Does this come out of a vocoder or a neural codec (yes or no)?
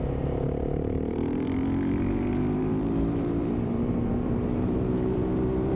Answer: yes